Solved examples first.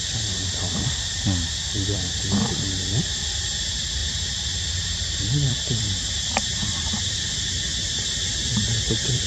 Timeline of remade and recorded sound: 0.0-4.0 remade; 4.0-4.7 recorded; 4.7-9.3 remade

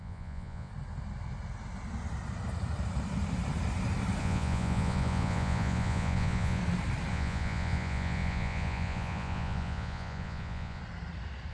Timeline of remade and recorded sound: 0.0-0.7 remade; 0.7-4.2 recorded; 4.2-6.6 remade; 6.6-7.1 recorded; 7.1-10.8 remade; 10.8-11.5 recorded

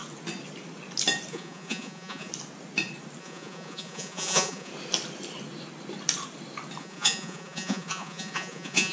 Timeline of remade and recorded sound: 0.0-1.3 recorded; 1.3-2.3 remade; 2.3-3.2 recorded; 3.2-4.7 remade; 4.7-6.8 recorded; 6.8-8.9 remade

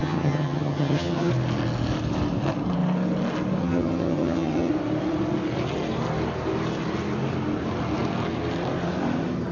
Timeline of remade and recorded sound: 0.0-1.3 remade; 1.3-3.6 recorded; 3.6-4.7 remade; 4.7-9.5 recorded

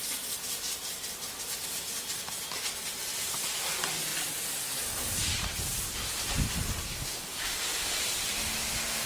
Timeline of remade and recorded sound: 0.0-7.3 recorded; 7.3-8.3 remade; 8.3-9.1 recorded